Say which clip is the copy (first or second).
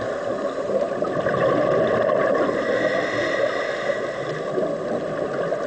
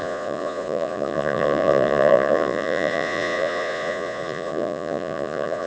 second